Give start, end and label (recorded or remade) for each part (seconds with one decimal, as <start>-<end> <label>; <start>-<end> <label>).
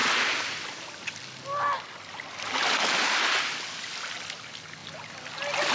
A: 0.0-5.7 recorded